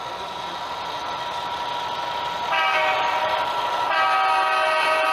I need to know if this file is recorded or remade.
recorded